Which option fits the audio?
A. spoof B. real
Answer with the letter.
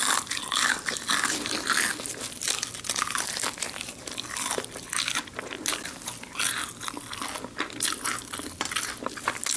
B